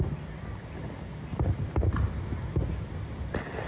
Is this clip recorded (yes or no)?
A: yes